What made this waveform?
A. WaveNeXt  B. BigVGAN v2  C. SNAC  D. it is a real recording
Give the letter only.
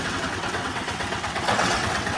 A